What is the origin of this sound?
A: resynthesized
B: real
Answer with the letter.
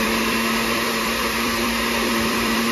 A